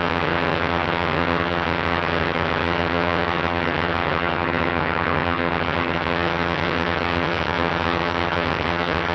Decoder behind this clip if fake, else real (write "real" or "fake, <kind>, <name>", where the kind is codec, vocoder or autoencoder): fake, vocoder, HiFi-GAN